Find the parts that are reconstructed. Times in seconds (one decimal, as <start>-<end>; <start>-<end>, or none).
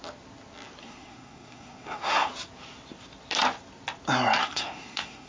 0.8-2.3; 4.4-5.3